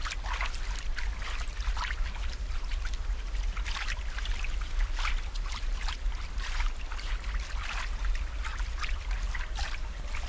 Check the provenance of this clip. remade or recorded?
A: recorded